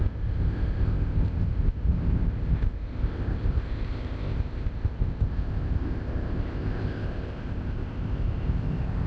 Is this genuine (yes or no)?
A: no